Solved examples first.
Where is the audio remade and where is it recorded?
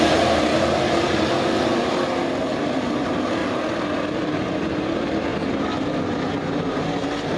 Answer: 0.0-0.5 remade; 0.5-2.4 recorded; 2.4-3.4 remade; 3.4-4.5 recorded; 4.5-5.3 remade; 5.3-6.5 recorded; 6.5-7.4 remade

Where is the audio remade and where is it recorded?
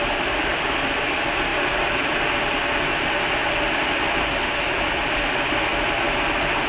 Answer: 0.0-5.7 remade; 5.7-6.7 recorded